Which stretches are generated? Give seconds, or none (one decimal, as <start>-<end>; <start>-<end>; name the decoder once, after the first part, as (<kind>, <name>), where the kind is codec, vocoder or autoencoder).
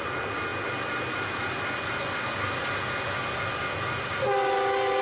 none